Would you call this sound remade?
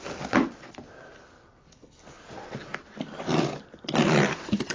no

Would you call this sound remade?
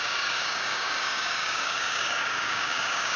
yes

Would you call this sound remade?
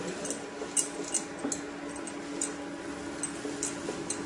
no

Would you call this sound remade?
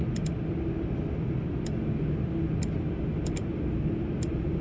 no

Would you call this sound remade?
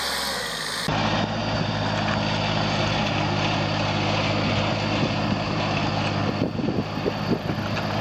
no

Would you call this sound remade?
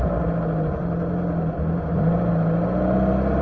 no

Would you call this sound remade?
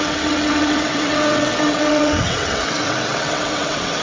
yes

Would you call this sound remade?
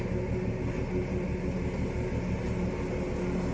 no